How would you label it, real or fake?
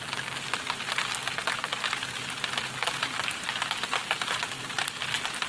real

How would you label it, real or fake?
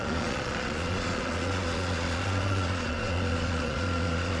fake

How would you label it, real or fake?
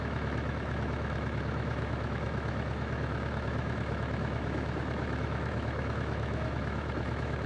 fake